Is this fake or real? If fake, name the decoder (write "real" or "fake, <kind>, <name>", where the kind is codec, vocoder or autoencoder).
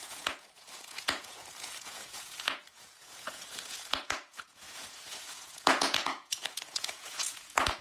fake, vocoder, Vocos